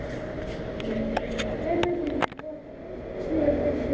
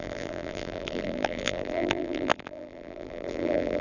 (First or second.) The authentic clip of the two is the first